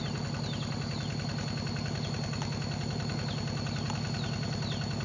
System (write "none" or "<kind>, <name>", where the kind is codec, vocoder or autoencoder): none